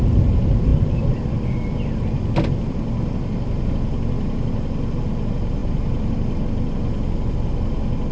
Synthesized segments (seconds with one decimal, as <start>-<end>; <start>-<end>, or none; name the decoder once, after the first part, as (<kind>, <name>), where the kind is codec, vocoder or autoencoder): none